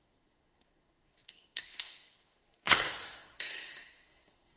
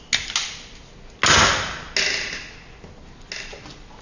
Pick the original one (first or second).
second